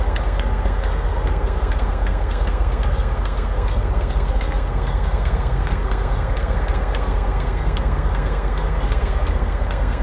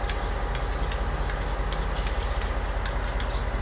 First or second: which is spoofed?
first